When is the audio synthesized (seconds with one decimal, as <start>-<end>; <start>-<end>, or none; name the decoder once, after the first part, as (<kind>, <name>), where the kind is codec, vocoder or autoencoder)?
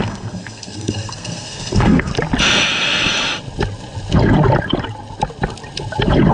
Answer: 0.0-2.1 (codec, SNAC)